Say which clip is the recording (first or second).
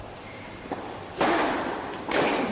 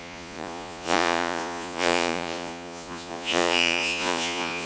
first